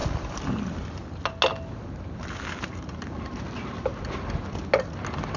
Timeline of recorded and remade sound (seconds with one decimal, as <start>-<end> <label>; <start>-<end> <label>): 0.0-5.4 recorded